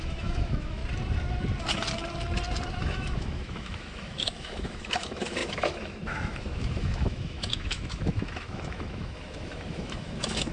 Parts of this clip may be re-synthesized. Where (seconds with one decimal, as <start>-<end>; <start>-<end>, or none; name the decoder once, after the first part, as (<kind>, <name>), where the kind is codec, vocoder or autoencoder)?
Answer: 0.0-0.8 (autoencoder, DAC-VAE); 2.8-10.5